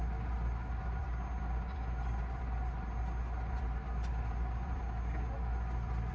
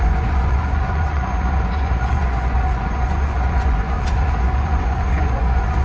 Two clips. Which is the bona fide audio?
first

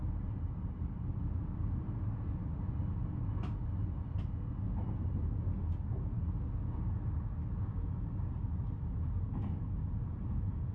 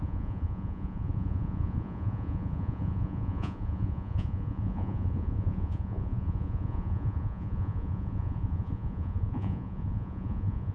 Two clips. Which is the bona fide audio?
first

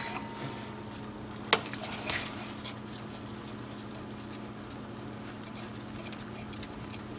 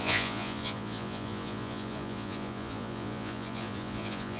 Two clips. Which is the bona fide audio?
first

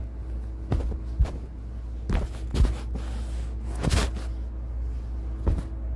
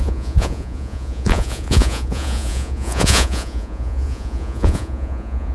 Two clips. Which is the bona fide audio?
first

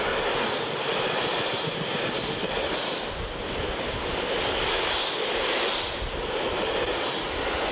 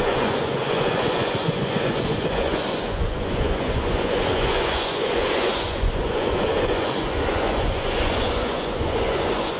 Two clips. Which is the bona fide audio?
first